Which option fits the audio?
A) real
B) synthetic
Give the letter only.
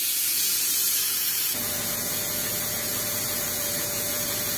B